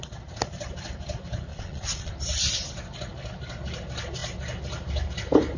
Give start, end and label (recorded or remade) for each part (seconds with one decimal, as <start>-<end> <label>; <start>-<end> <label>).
0.0-1.5 recorded; 1.5-2.1 remade; 2.1-5.6 recorded